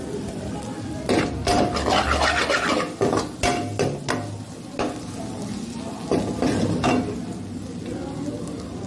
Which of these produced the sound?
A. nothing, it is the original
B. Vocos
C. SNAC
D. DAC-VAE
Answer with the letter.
A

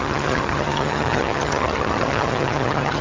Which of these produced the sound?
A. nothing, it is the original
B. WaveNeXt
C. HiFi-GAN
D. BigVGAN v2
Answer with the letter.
C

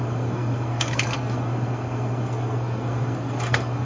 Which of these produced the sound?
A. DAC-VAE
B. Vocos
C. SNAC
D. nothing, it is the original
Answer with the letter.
C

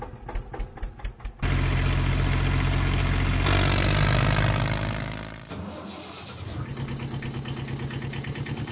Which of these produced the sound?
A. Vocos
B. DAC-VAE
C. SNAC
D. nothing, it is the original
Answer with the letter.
D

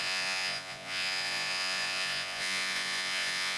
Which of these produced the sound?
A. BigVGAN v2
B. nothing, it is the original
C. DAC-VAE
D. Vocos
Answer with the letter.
D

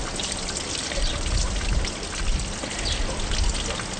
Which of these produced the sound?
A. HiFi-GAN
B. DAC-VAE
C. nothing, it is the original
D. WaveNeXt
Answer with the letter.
C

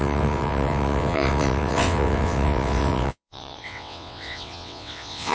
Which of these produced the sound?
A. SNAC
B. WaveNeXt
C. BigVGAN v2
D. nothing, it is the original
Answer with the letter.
B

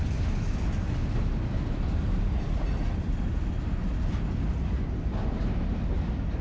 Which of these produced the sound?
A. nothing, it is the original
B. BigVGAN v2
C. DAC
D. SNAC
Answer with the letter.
A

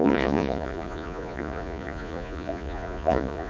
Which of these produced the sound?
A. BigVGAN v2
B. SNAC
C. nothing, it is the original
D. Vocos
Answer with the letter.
D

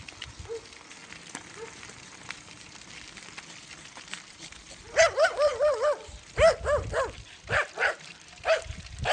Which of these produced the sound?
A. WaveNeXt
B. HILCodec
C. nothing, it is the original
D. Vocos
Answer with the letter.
C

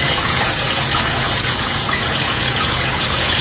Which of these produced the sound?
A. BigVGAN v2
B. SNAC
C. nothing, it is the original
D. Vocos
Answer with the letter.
D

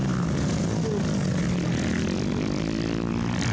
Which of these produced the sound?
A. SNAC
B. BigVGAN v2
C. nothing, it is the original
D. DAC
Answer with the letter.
C